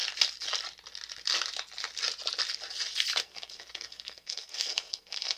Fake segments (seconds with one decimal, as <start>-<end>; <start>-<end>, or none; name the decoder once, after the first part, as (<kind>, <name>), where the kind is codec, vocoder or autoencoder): 3.2-5.4 (codec, SNAC)